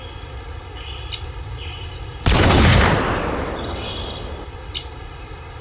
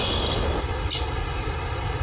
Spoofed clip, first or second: first